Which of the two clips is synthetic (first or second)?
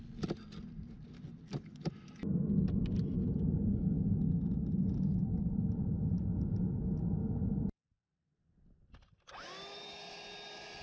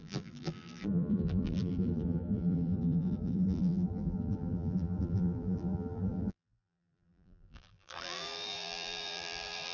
second